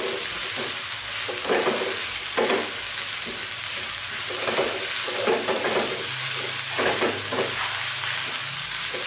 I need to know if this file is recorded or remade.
recorded